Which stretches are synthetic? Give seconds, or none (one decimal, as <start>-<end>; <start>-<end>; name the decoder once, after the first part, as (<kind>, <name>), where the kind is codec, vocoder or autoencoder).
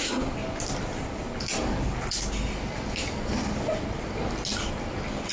none